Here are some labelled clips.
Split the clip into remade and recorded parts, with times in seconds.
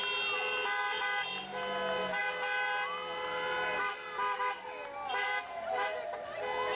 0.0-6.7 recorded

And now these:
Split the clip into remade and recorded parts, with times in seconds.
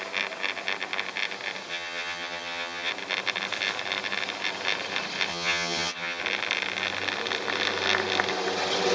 0.0-1.7 recorded; 1.7-2.9 remade; 2.9-5.3 recorded; 5.3-6.2 remade; 6.2-8.9 recorded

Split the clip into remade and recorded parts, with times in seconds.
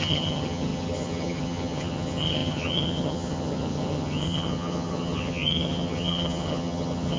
0.0-7.2 remade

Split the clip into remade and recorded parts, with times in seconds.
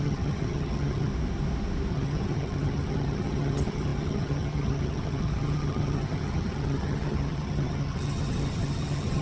0.0-1.1 remade; 1.1-1.9 recorded; 1.9-9.2 remade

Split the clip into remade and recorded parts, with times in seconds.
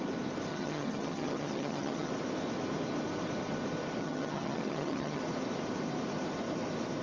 0.0-0.5 recorded; 0.5-2.1 remade; 2.1-4.0 recorded; 4.0-5.2 remade; 5.2-7.0 recorded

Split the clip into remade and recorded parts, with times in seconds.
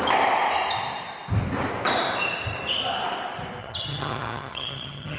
0.0-3.6 recorded; 3.6-5.2 remade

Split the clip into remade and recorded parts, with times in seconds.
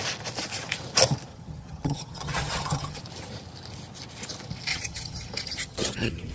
0.0-1.3 recorded; 1.3-3.0 remade; 3.0-4.7 recorded; 4.7-6.3 remade